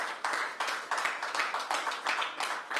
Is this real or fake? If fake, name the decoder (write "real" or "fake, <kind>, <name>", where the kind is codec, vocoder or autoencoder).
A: real